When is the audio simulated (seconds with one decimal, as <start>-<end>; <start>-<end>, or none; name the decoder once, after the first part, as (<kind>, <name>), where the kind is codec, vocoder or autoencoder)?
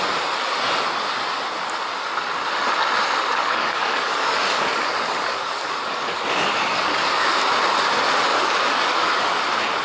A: 3.4-7.0 (codec, DAC); 8.3-9.4